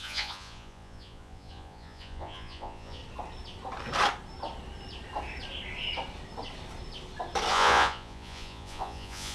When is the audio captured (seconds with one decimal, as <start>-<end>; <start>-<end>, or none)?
3.0-7.5